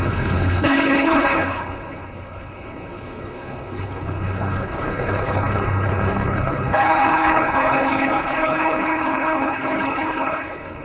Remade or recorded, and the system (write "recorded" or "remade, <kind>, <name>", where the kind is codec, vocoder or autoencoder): remade, codec, HILCodec